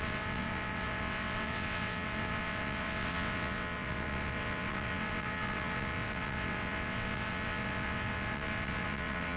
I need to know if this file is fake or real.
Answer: fake